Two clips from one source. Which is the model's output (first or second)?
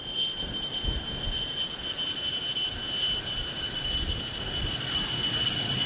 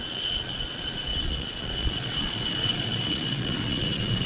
second